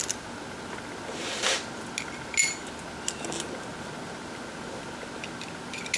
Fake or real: real